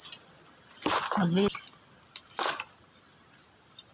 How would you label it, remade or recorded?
recorded